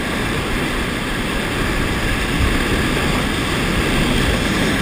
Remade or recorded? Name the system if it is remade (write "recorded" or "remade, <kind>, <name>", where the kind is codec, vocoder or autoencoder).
recorded